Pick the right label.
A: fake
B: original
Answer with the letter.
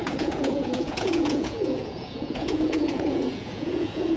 A